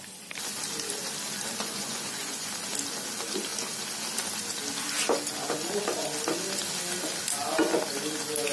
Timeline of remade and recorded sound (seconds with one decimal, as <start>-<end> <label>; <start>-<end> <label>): 0.0-1.6 recorded; 1.6-2.5 remade; 2.5-8.5 recorded